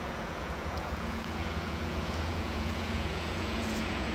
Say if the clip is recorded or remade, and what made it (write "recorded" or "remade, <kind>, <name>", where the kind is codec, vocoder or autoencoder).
remade, vocoder, Vocos